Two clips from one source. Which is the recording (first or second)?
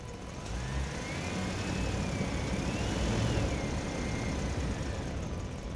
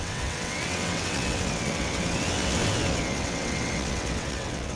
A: first